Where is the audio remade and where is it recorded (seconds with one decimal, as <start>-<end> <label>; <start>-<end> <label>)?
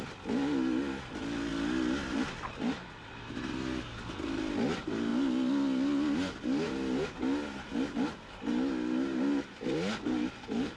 0.0-10.8 recorded